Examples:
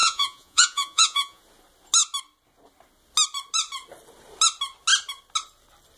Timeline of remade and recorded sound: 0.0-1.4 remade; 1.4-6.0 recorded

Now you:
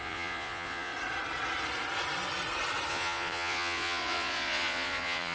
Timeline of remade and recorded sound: 0.0-0.9 remade; 0.9-2.9 recorded; 2.9-5.3 remade

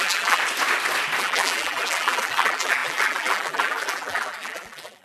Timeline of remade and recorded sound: 0.0-0.4 remade; 0.4-1.2 recorded; 1.2-5.0 remade

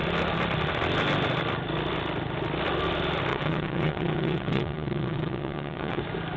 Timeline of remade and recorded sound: 0.0-3.3 recorded; 3.3-6.0 remade; 6.0-6.4 recorded